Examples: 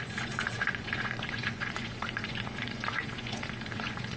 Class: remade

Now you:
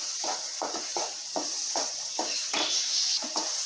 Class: remade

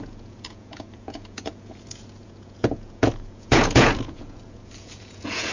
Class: remade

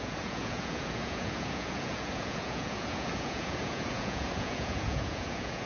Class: remade